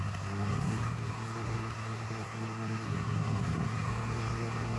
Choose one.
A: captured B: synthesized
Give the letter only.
B